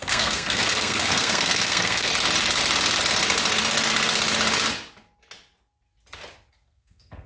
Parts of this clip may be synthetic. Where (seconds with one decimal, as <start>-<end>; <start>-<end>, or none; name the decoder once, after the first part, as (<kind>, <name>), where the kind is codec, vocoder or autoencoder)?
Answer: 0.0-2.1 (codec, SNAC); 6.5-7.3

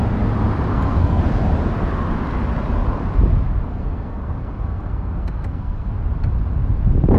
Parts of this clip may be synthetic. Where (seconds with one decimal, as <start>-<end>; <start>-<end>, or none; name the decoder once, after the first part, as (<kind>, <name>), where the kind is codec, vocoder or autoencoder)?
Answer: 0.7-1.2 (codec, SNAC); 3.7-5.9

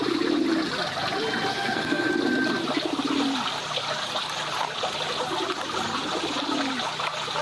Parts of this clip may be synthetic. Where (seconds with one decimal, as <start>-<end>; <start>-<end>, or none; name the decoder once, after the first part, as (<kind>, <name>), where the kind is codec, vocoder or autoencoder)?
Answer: 1.5-2.1 (codec, SNAC)

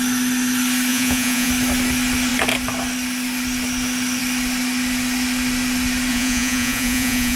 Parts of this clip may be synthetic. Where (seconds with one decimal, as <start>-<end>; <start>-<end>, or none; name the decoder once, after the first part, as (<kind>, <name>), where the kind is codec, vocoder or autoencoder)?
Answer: 0.9-1.5 (vocoder, Vocos); 6.1-7.4